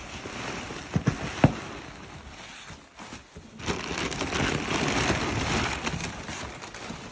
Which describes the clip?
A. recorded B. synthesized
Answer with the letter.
A